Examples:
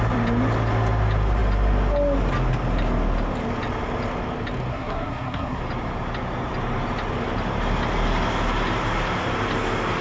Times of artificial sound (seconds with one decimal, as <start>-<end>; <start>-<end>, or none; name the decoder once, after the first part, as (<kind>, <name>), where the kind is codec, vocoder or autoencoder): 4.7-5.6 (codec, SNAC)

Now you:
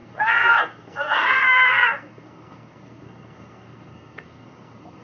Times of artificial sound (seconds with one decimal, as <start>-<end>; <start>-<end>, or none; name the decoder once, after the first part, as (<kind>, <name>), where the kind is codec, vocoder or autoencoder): 0.0-5.0 (codec, SNAC)

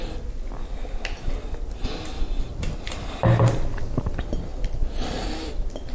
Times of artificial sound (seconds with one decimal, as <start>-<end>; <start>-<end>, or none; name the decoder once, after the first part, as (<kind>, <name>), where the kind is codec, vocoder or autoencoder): none

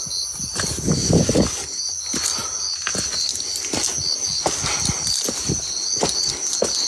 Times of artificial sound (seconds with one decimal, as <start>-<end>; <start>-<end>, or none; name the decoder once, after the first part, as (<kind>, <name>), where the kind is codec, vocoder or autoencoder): none

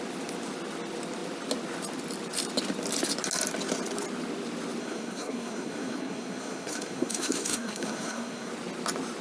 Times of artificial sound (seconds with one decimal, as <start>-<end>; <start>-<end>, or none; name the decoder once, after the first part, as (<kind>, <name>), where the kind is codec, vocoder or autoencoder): 4.8-8.5 (codec, SNAC)